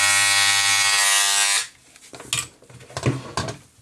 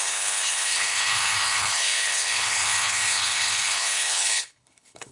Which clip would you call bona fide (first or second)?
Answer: first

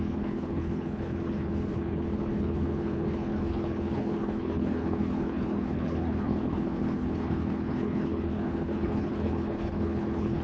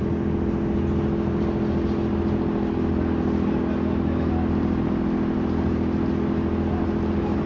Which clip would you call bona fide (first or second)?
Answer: second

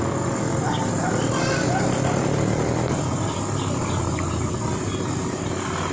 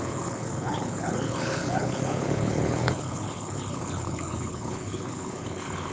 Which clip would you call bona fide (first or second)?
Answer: first